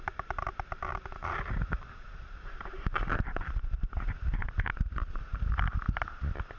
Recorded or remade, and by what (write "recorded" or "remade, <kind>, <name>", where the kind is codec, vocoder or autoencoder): remade, vocoder, BigVGAN v2